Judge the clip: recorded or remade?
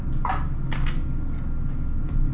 recorded